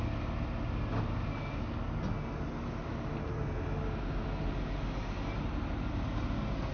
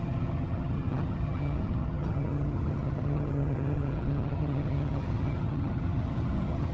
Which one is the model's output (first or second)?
second